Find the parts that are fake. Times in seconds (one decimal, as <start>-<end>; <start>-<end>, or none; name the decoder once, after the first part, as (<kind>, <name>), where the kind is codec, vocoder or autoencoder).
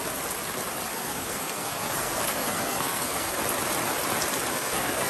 0.9-3.4 (codec, SNAC); 4.5-5.1